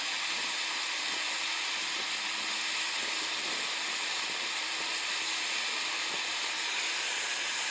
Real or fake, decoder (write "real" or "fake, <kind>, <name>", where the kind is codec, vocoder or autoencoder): real